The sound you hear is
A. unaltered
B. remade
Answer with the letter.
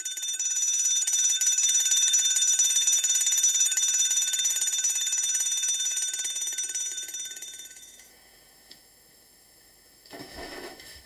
B